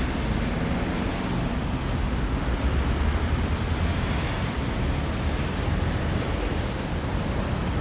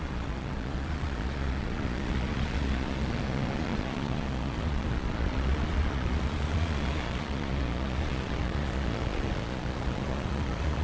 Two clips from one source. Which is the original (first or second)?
first